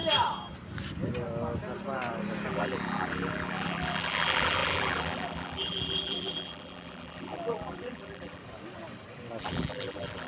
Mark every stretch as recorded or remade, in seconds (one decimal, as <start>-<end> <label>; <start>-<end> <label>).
0.0-2.5 recorded; 2.5-8.4 remade; 8.4-9.4 recorded; 9.4-10.3 remade